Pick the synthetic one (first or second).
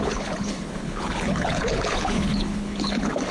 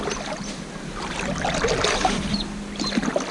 first